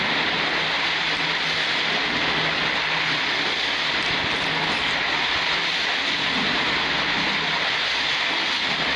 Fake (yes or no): no